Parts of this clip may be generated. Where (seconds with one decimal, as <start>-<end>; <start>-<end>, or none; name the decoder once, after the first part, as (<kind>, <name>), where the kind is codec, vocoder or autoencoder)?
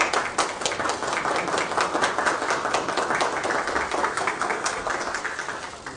4.0-4.9 (codec, SNAC)